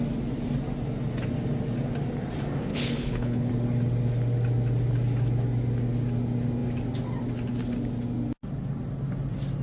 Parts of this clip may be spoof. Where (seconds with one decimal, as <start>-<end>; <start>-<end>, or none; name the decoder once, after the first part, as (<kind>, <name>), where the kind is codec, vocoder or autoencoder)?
2.7-3.5 (codec, HILCodec)